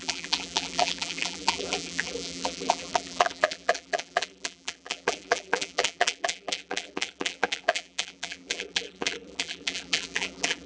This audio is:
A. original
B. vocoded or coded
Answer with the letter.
B